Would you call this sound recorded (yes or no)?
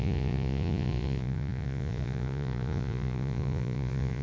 no